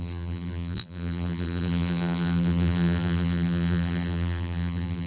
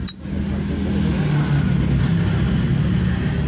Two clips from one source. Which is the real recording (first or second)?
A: second